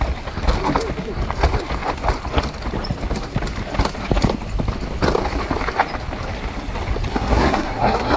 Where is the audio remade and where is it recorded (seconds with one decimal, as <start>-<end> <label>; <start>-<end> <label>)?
0.0-7.1 recorded; 7.1-8.2 remade